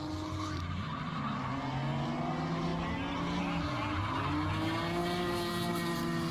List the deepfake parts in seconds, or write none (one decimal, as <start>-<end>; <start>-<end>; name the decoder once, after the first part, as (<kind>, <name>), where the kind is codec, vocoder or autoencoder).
none